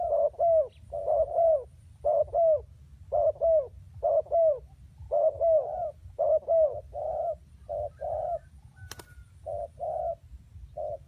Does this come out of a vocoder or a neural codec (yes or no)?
no